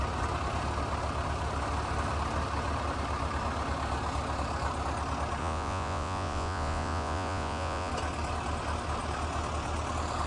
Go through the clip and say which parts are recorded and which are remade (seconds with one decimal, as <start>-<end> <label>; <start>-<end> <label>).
0.0-5.4 recorded; 5.4-7.9 remade; 7.9-10.3 recorded